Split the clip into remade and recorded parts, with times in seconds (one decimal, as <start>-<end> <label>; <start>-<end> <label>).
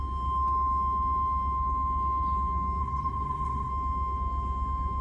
0.0-2.8 recorded; 2.8-3.7 remade; 3.7-5.0 recorded